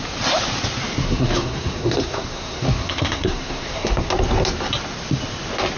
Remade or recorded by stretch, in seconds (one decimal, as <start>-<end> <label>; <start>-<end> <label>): 0.0-1.0 recorded; 1.0-4.1 remade; 4.1-5.8 recorded